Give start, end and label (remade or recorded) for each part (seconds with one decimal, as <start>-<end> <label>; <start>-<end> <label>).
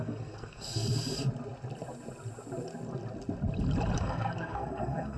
0.0-0.9 remade; 0.9-4.0 recorded; 4.0-5.2 remade